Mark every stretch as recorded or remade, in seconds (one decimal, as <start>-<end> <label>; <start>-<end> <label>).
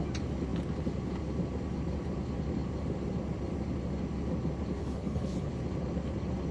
0.0-4.8 recorded; 4.8-5.5 remade; 5.5-6.5 recorded